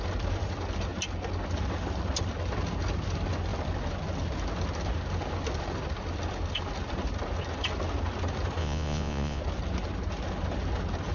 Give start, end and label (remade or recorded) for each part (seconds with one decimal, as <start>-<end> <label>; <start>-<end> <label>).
0.0-8.6 recorded; 8.6-9.4 remade; 9.4-11.1 recorded

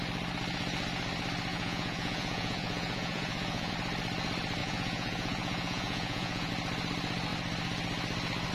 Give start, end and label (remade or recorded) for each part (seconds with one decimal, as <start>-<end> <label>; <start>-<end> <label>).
0.0-1.5 recorded; 1.5-3.7 remade; 3.7-4.6 recorded; 4.6-6.5 remade; 6.5-8.5 recorded

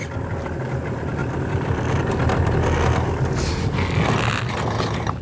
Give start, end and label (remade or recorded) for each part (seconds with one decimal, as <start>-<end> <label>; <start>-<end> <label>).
0.0-5.2 recorded

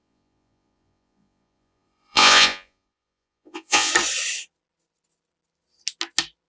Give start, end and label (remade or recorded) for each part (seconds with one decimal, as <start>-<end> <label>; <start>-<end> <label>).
0.0-3.9 remade; 3.9-6.5 recorded

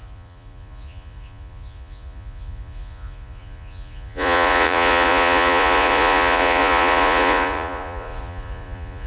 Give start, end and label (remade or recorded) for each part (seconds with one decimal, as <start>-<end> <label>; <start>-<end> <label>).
0.0-9.1 remade